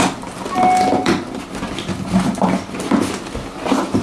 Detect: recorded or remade recorded